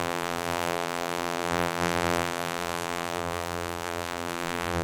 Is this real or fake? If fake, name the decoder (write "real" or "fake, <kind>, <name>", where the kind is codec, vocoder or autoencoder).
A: fake, vocoder, BigVGAN v2